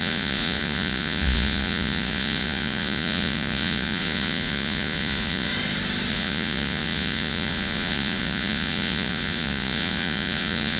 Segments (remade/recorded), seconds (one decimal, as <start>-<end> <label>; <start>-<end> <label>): 0.0-5.5 remade; 5.5-6.1 recorded; 6.1-10.8 remade